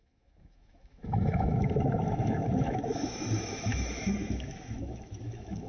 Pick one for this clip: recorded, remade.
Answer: remade